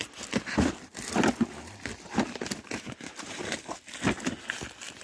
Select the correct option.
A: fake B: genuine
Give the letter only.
B